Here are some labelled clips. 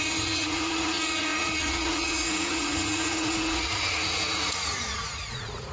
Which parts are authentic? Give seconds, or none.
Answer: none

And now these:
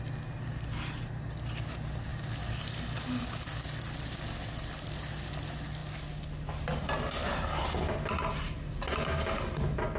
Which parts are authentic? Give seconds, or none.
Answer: 0.0-10.0